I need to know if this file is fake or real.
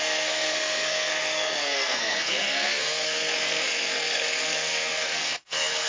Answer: fake